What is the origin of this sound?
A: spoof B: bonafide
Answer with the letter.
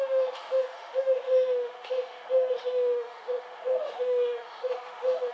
A